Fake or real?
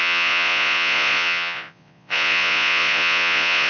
fake